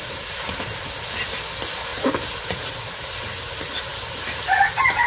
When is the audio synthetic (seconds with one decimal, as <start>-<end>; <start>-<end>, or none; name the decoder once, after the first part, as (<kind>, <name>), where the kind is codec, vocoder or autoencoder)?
none

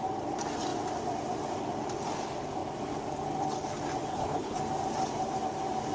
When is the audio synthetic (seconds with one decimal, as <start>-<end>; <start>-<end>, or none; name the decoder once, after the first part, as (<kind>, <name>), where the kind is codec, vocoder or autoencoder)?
4.1-4.6 (codec, HILCodec)

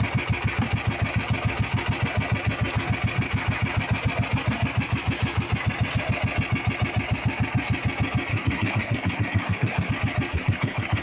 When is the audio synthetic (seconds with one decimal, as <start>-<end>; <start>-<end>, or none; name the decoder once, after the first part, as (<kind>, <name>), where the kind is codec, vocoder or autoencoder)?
8.3-9.9 (codec, SNAC); 10.3-11.0

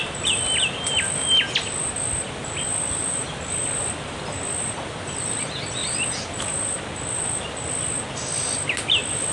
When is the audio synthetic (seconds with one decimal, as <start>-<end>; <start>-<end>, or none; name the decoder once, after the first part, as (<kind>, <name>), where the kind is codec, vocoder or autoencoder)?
none